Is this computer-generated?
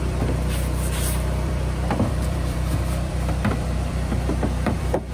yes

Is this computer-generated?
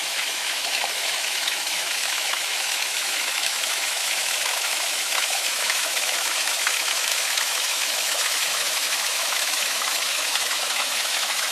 yes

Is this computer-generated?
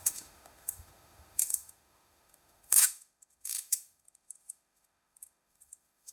yes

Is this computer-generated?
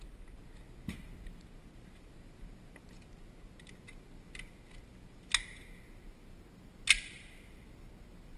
no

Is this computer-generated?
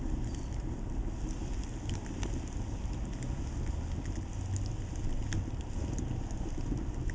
no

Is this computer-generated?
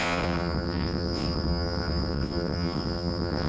yes